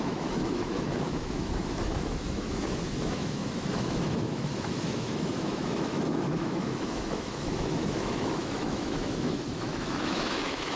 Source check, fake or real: fake